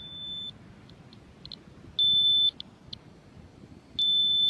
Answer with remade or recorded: recorded